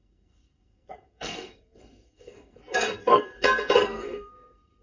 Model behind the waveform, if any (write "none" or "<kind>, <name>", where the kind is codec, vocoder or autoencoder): codec, SNAC